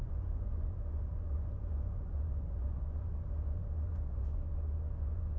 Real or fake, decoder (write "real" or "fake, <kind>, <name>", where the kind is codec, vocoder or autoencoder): fake, vocoder, Vocos